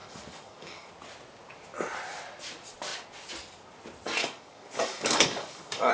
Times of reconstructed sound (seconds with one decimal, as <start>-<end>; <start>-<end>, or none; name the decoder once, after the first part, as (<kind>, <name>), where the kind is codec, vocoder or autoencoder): 0.0-0.9 (codec, DAC); 4.2-5.9